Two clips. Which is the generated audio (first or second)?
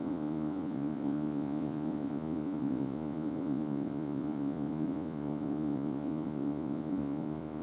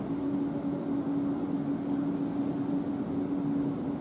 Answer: first